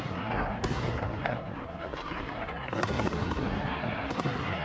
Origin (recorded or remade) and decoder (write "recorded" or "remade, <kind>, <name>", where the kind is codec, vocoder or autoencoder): remade, codec, SNAC